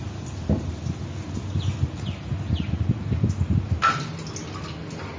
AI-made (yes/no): no